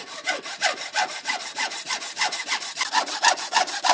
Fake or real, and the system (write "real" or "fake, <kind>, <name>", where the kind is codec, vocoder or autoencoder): fake, vocoder, BigVGAN v2